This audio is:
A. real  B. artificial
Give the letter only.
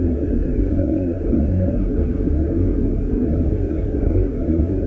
B